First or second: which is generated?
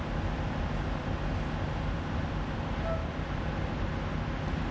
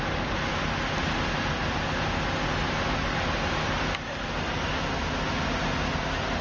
first